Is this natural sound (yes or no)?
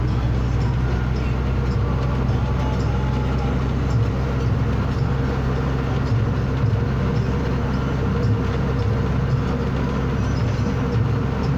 yes